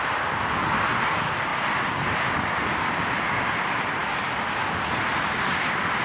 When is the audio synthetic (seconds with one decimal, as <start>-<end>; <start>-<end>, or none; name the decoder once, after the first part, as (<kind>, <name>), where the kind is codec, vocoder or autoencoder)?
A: none